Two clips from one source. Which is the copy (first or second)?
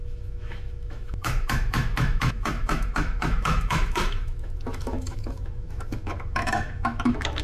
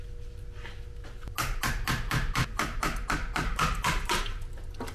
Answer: first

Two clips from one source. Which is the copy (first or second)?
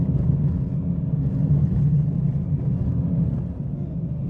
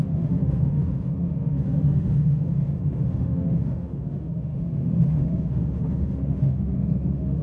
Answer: second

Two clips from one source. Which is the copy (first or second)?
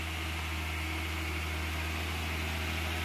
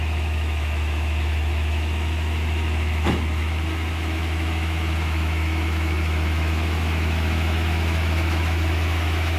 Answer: second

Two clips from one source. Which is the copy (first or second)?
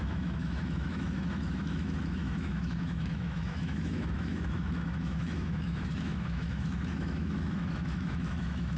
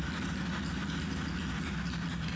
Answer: first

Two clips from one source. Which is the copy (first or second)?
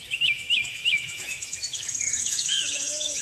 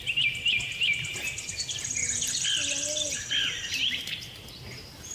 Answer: first